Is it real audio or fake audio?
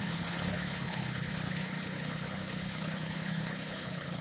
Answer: fake